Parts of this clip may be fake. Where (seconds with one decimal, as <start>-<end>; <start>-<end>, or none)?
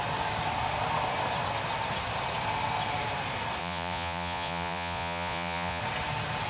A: 3.6-5.8